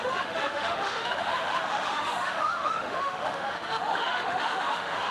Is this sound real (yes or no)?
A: no